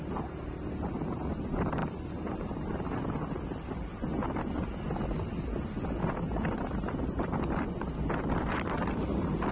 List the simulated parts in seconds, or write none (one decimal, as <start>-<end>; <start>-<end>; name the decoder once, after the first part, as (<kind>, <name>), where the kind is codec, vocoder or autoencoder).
none